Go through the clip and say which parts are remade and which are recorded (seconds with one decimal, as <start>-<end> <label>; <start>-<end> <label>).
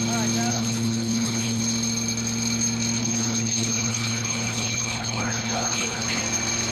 0.0-0.5 recorded; 0.5-1.6 remade; 1.6-3.0 recorded; 3.0-6.2 remade; 6.2-6.7 recorded